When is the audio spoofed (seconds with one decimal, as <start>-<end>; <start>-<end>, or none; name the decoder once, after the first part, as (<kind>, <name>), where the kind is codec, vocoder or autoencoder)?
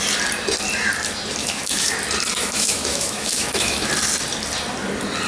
1.4-1.9 (autoencoder, DAC-VAE); 2.4-3.9